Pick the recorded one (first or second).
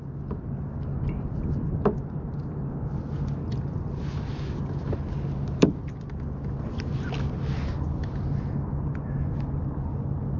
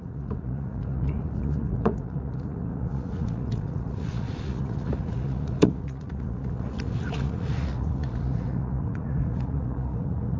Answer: first